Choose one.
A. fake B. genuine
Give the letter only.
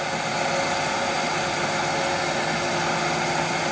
B